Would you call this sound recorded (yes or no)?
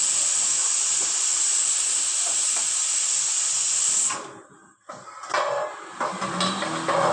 yes